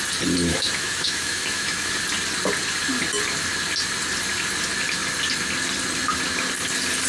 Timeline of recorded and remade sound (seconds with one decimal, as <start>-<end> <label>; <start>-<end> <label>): 0.0-0.5 recorded; 0.5-1.9 remade; 1.9-7.1 recorded